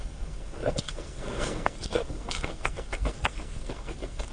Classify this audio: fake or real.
fake